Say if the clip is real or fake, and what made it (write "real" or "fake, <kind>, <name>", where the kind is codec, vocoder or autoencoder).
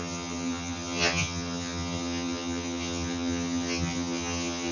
fake, vocoder, HiFi-GAN